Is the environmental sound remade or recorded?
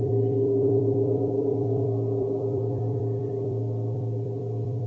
remade